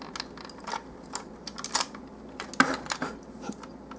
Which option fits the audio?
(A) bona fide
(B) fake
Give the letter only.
A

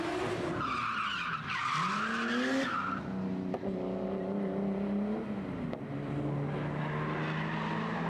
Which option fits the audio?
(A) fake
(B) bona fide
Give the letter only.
B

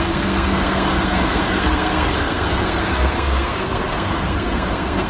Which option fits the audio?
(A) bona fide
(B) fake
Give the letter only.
B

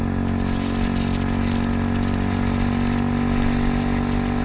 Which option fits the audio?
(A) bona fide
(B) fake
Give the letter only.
A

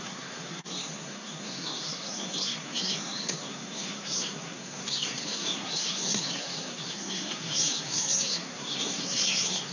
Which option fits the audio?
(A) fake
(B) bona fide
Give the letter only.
A